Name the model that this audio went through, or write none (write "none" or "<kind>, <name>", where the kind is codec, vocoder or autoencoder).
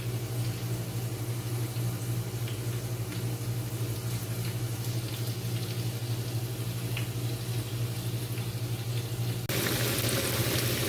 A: none